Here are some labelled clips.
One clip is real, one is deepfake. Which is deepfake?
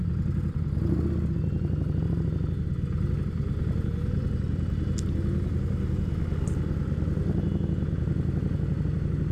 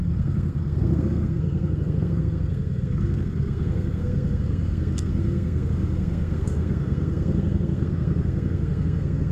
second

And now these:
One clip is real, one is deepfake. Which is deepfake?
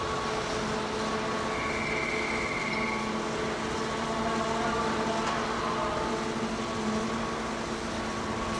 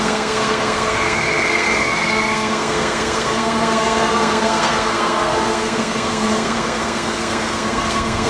second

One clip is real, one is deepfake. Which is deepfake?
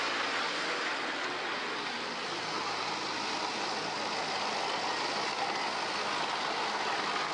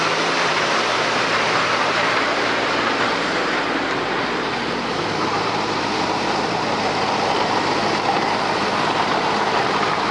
second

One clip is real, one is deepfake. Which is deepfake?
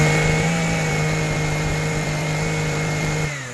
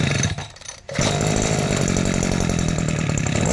first